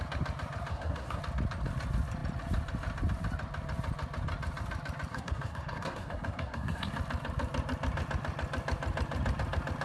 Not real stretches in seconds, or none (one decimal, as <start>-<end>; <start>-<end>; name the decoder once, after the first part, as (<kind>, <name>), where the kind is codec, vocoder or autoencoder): 0.7-1.2 (codec, SNAC); 5.1-6.9